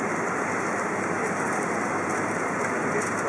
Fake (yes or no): yes